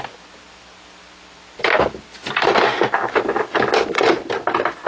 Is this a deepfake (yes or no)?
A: no